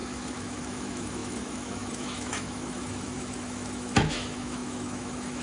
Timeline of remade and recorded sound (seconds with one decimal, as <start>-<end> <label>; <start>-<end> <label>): 0.0-5.4 remade